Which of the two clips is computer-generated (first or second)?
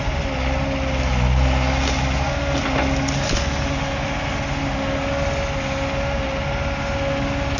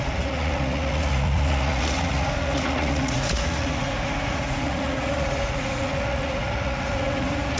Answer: second